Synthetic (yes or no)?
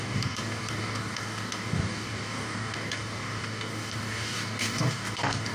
yes